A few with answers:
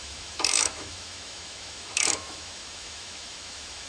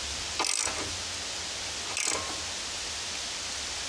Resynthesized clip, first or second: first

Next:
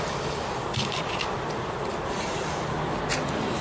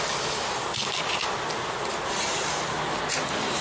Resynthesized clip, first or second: first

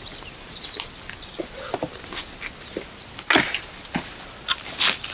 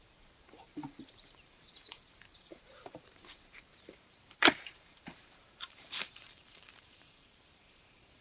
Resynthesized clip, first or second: second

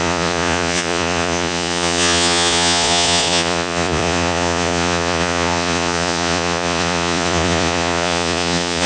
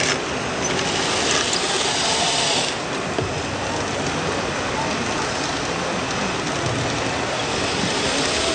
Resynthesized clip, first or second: first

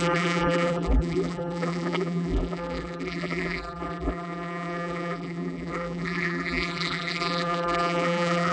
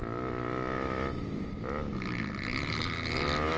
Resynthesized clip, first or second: first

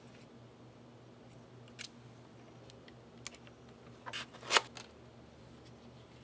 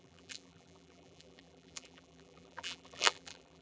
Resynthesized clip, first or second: second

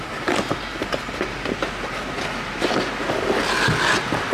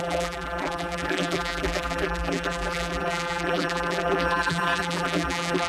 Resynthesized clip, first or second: second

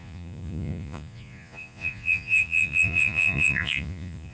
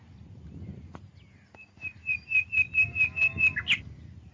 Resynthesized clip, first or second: first